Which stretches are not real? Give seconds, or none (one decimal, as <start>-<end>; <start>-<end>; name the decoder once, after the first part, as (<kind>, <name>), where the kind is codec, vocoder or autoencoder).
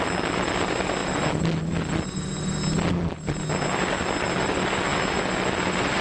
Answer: none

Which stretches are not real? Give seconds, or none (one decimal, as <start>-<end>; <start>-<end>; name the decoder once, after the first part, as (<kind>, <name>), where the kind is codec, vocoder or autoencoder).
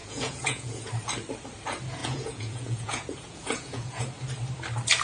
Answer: 0.0-0.9 (vocoder, Vocos); 2.0-4.0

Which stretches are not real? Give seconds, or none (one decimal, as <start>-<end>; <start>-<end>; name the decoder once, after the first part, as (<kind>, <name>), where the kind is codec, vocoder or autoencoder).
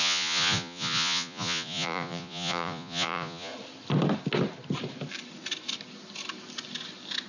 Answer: 0.0-3.5 (vocoder, Vocos)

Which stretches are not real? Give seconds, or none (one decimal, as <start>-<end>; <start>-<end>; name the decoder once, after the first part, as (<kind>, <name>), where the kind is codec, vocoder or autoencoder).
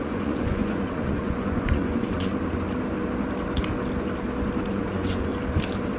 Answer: 0.0-2.3 (vocoder, Vocos); 4.7-5.3